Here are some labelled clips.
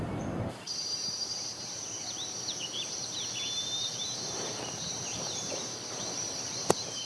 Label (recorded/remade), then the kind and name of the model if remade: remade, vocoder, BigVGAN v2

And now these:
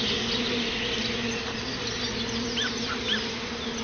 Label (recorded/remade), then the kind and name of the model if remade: recorded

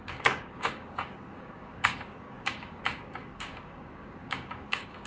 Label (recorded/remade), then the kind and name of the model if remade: remade, codec, DAC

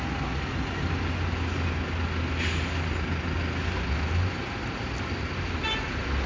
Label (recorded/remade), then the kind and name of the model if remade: recorded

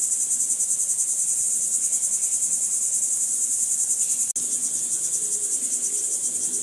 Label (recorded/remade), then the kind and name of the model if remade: recorded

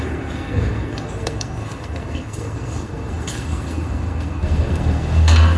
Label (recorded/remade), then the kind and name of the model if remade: remade, codec, SNAC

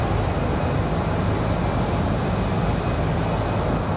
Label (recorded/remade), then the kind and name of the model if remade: recorded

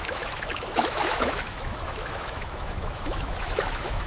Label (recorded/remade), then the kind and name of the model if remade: remade, autoencoder, DAC-VAE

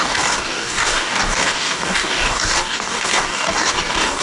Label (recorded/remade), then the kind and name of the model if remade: remade, codec, DAC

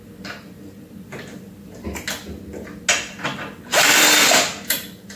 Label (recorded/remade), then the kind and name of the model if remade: recorded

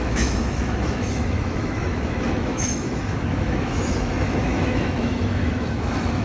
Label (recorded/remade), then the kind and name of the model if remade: remade, autoencoder, DAC-VAE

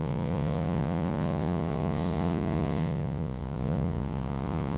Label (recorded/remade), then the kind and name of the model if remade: remade, vocoder, Vocos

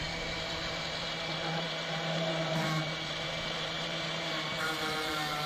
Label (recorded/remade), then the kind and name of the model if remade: remade, vocoder, BigVGAN v2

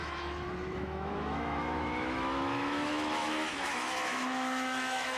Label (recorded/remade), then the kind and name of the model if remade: remade, autoencoder, DAC-VAE